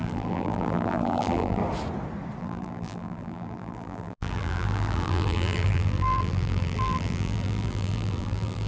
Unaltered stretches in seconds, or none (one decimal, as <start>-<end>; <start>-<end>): 1.6-2.4